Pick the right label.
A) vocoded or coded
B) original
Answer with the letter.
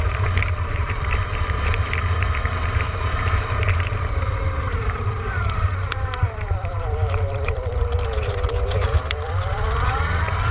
A